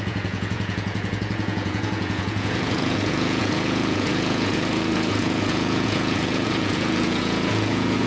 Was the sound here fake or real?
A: fake